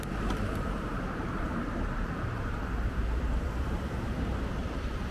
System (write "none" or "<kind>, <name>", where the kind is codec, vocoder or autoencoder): vocoder, BigVGAN v2